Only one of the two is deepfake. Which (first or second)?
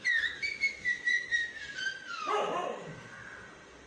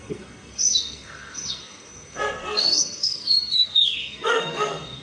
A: second